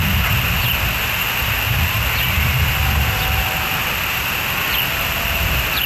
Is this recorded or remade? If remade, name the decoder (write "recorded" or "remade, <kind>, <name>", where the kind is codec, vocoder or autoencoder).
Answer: recorded